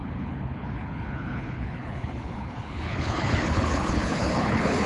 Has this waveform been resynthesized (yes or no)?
yes